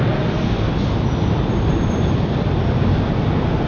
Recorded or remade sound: recorded